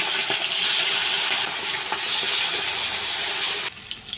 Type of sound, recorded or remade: recorded